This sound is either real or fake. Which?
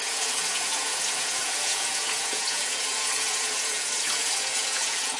fake